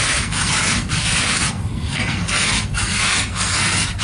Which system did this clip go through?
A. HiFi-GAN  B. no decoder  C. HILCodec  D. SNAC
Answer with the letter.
D